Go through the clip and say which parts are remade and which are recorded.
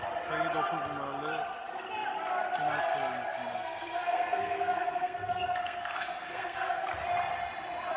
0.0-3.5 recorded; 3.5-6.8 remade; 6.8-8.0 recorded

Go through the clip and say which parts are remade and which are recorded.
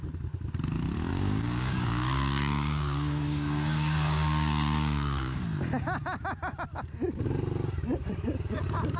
0.0-1.1 recorded; 1.1-5.4 remade; 5.4-9.0 recorded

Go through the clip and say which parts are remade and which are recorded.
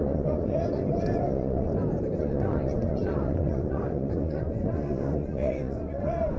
0.0-1.7 remade; 1.7-2.2 recorded; 2.2-6.4 remade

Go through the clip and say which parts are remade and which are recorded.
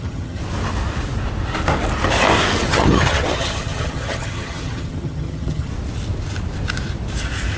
0.0-0.4 remade; 0.4-2.6 recorded; 2.6-5.7 remade; 5.7-7.6 recorded